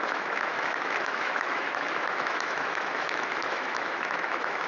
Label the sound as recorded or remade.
remade